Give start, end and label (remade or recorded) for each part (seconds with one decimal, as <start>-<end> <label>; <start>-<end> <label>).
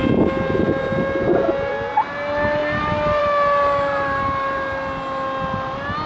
0.0-6.1 recorded